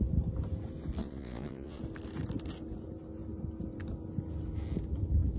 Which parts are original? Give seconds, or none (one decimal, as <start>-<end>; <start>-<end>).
0.0-1.0; 1.8-5.4